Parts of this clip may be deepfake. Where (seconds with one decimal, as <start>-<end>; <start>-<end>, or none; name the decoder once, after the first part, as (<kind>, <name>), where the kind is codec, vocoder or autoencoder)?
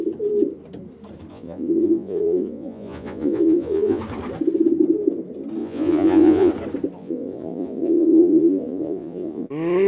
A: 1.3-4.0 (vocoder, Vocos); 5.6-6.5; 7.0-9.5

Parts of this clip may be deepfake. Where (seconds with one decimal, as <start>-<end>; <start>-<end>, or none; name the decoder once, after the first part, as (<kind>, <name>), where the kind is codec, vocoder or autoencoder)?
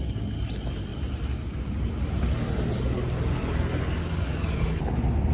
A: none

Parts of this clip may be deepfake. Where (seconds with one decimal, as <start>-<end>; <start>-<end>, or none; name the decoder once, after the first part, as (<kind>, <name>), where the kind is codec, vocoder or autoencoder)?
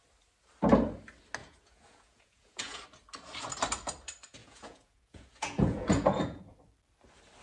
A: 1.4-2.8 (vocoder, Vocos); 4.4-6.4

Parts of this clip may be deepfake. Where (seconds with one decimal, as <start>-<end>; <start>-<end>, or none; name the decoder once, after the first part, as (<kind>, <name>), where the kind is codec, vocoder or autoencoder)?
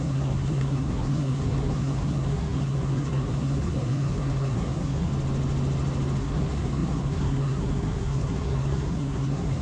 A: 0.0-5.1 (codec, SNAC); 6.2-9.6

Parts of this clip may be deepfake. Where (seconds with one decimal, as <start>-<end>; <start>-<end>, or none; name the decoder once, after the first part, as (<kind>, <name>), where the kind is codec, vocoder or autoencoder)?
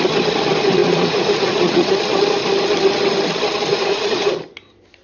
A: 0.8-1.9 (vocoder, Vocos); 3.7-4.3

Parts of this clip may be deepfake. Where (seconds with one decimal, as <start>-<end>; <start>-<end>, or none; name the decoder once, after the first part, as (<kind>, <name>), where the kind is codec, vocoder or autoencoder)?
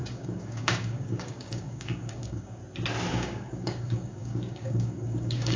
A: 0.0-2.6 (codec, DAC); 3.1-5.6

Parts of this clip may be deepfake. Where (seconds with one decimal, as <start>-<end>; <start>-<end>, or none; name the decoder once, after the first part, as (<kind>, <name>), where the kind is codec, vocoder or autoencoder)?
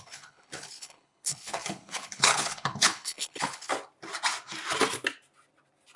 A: 0.0-3.7 (codec, HILCodec)